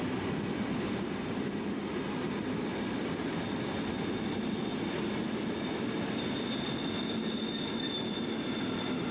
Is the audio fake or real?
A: real